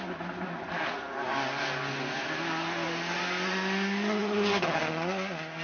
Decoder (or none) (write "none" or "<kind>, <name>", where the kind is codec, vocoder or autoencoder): none